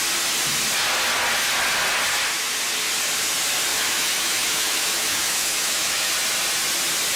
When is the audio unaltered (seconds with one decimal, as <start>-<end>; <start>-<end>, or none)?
0.0-3.7; 6.1-7.2